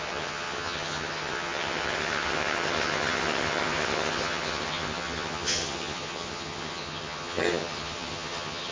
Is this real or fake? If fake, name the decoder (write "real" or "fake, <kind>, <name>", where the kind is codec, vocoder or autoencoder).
fake, vocoder, HiFi-GAN